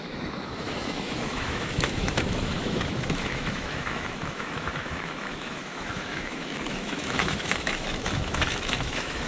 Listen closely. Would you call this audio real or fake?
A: fake